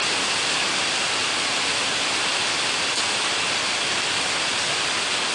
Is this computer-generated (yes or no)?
no